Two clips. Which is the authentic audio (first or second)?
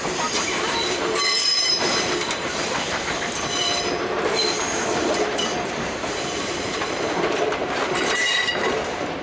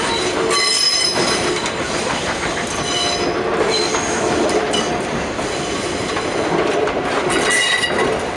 second